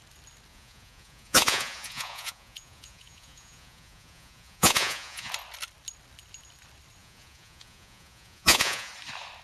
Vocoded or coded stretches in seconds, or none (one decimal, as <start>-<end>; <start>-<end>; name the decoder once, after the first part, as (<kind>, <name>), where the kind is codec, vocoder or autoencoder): 0.5-5.3 (vocoder, Vocos); 7.0-8.9